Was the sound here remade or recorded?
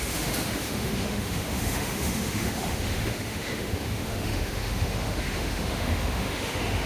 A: remade